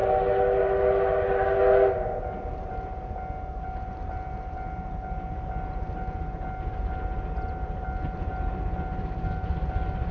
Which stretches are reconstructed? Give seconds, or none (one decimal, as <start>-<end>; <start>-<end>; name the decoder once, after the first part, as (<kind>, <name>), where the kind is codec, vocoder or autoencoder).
none